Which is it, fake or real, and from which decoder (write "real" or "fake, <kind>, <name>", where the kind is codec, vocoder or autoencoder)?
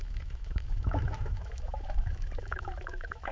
fake, autoencoder, DAC-VAE